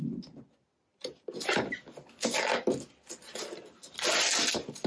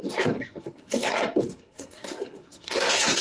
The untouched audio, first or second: first